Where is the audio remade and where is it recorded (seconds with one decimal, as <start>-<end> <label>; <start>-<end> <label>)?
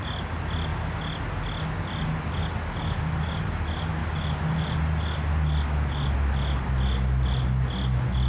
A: 0.0-8.3 recorded